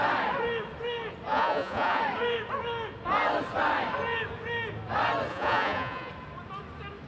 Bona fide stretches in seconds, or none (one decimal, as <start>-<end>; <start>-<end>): 0.0-1.3; 2.0-5.3; 6.1-7.1